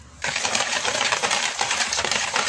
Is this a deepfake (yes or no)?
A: yes